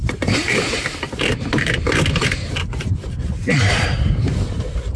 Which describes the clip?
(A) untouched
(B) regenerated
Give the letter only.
B